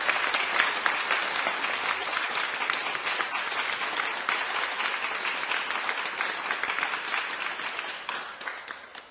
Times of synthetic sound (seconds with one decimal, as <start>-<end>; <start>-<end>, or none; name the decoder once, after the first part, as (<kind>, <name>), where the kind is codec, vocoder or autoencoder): 0.0-1.2 (vocoder, BigVGAN v2); 6.3-9.1

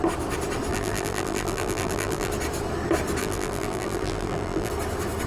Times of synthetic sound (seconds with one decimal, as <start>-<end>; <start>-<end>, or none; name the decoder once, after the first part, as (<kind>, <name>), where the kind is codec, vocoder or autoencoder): 0.7-2.3 (vocoder, BigVGAN v2); 3.2-4.7

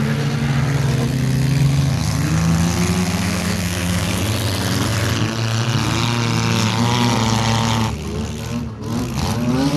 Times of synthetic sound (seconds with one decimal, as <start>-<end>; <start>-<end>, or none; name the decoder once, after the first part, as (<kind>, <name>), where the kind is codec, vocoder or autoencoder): 3.0-4.2 (codec, DAC)

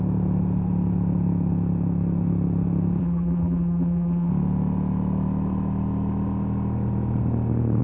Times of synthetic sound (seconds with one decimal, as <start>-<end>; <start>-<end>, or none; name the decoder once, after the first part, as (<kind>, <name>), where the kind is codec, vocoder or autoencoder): 3.0-4.3 (vocoder, BigVGAN v2)